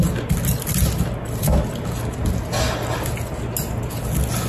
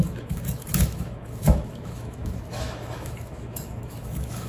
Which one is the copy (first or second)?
second